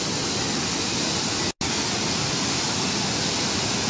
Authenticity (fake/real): real